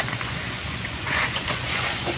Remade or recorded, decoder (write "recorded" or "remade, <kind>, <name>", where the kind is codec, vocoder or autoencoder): remade, vocoder, Vocos